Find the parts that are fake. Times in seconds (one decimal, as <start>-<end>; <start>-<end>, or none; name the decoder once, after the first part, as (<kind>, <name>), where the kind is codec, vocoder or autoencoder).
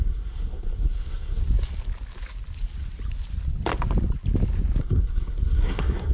0.0-1.4 (codec, SNAC); 4.8-6.1